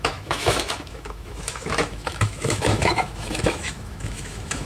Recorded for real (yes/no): no